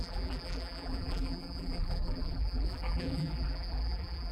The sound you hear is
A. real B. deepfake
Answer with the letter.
B